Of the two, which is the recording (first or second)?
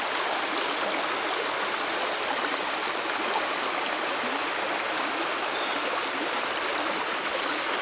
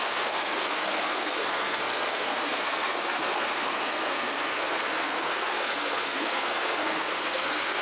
first